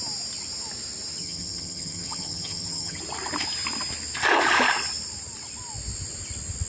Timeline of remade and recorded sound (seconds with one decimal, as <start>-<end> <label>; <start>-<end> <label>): 0.0-1.2 recorded; 1.2-3.0 remade; 3.0-6.7 recorded